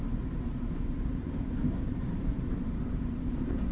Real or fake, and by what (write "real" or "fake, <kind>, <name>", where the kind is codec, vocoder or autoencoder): fake, vocoder, BigVGAN v2